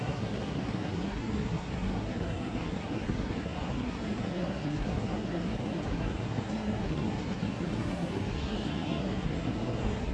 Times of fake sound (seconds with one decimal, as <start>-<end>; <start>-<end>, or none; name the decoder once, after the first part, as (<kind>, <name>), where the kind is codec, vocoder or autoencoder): 0.0-10.1 (codec, SNAC)